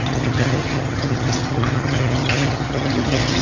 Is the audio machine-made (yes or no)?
yes